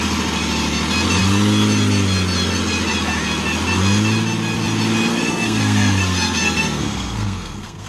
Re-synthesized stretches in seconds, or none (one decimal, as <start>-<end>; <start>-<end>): 5.1-7.9